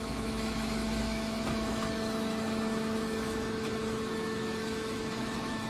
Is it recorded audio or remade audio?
remade